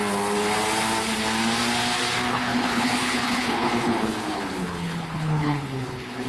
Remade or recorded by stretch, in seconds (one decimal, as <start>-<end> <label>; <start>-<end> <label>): 0.0-2.3 recorded; 2.3-6.3 remade